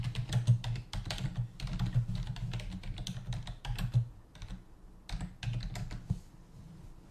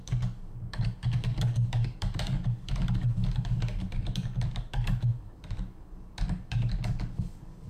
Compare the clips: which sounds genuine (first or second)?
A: first